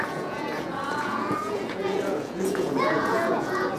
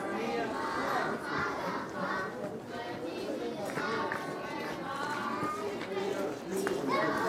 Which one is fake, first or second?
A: first